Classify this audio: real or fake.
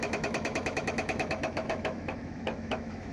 fake